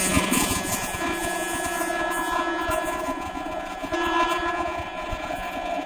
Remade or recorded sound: remade